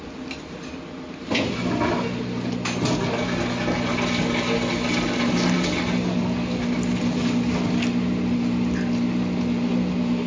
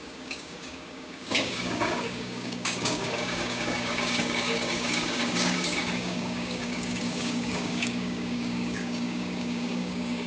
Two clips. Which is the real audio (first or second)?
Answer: first